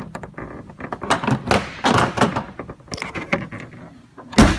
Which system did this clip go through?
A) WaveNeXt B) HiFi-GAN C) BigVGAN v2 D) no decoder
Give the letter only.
D